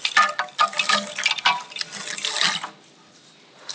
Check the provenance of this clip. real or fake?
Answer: real